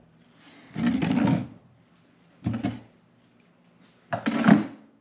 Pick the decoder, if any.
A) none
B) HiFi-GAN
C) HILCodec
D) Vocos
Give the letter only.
A